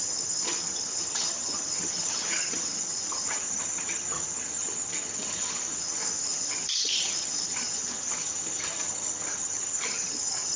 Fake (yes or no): yes